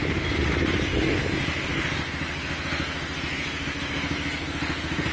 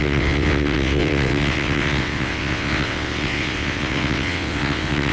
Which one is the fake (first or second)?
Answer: second